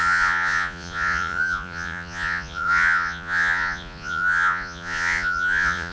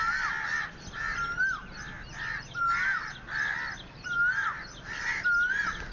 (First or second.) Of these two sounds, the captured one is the second